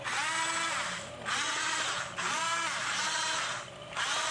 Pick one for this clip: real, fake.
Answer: real